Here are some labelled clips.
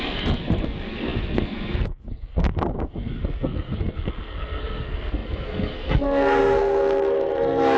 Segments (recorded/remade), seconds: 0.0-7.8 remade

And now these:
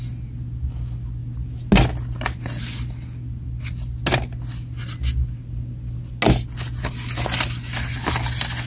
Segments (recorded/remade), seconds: 0.0-8.7 recorded

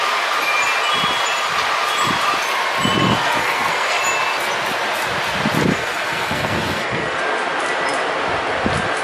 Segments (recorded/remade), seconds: 0.0-3.1 recorded; 3.1-4.0 remade; 4.0-5.7 recorded; 5.7-7.2 remade; 7.2-9.0 recorded

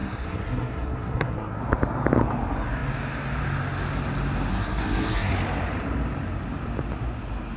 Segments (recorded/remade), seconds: 0.0-1.6 remade; 1.6-4.5 recorded; 4.5-5.3 remade; 5.3-7.6 recorded